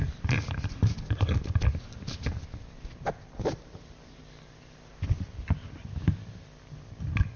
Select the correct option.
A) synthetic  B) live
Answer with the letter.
B